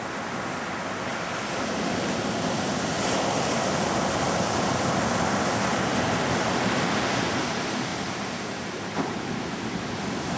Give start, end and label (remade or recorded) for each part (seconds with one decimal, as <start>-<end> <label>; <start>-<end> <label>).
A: 0.0-7.9 recorded; 7.9-9.3 remade; 9.3-10.4 recorded

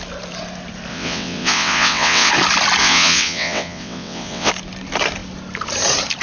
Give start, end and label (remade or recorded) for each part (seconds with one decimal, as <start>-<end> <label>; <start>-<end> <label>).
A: 0.0-0.9 recorded; 0.9-2.3 remade; 2.3-2.8 recorded; 2.8-4.5 remade; 4.5-6.2 recorded

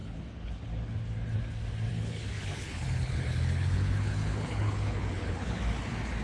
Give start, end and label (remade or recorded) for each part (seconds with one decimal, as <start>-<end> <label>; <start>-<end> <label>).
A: 0.0-0.7 remade; 0.7-1.9 recorded; 1.9-5.6 remade; 5.6-6.2 recorded

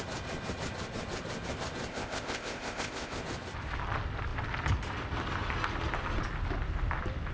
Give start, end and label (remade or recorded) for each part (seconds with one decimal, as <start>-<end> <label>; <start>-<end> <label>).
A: 0.0-1.9 recorded; 1.9-3.2 remade; 3.2-7.3 recorded

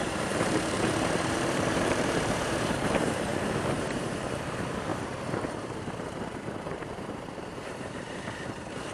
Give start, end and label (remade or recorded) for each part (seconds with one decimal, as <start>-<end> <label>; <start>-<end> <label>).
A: 0.0-8.9 remade

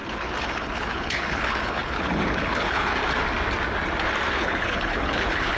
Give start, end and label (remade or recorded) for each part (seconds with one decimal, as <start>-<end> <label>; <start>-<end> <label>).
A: 0.0-3.0 remade; 3.0-4.3 recorded; 4.3-5.6 remade

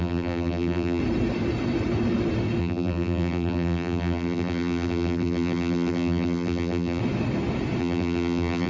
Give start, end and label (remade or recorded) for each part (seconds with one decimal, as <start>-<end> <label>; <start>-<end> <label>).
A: 0.0-1.0 remade; 1.0-2.6 recorded; 2.6-7.0 remade; 7.0-7.8 recorded; 7.8-8.7 remade